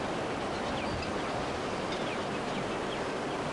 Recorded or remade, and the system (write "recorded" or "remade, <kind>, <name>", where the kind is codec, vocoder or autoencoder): recorded